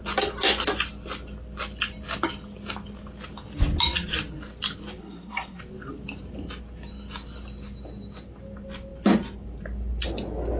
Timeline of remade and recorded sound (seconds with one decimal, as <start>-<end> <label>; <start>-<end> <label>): 0.0-5.0 recorded; 5.0-5.6 remade; 5.6-10.6 recorded